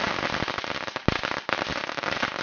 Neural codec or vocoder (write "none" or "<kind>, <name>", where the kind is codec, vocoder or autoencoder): none